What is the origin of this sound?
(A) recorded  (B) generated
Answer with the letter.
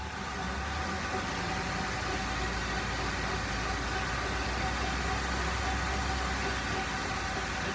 A